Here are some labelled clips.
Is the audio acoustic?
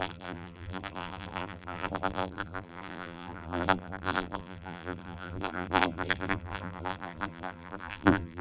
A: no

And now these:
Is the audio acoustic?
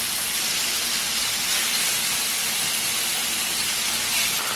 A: yes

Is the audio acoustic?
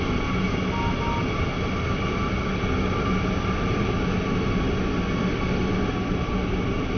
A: yes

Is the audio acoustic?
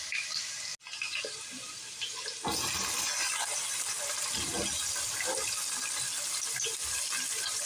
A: yes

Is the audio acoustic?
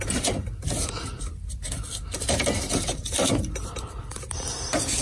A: yes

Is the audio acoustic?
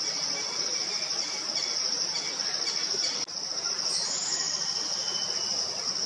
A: yes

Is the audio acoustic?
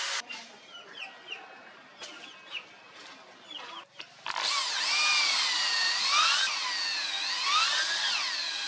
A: yes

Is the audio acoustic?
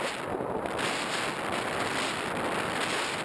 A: yes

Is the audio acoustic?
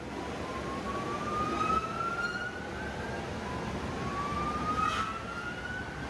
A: yes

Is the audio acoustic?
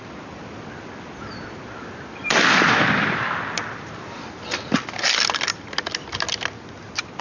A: yes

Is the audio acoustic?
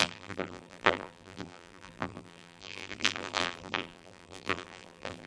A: no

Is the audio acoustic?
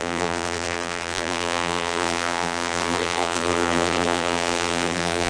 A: no